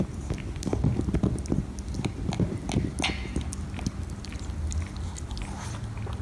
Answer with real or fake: real